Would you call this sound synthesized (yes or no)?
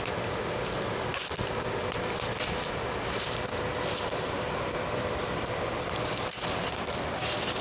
no